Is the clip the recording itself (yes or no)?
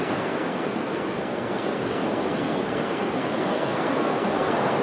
no